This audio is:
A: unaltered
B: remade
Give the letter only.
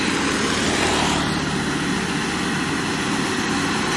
A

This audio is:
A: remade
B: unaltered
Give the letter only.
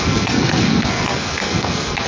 A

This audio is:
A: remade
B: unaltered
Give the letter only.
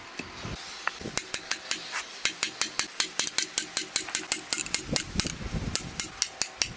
B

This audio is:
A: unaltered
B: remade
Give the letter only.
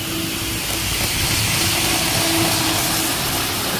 A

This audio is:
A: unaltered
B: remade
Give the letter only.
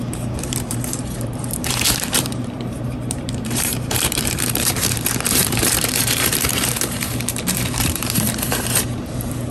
B